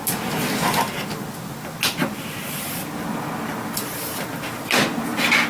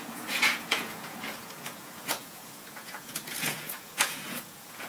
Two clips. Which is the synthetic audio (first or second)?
second